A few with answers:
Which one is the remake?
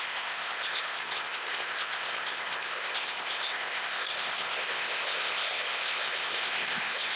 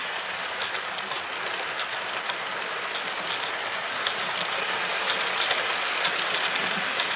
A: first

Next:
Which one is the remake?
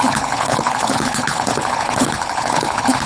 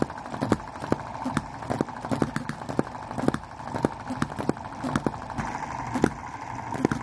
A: first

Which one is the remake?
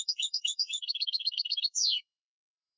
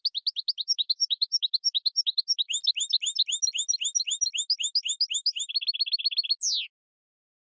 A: first